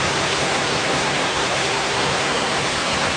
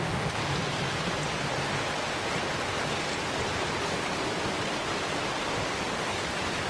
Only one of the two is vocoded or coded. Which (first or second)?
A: first